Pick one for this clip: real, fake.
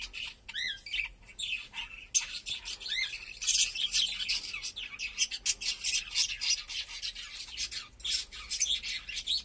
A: real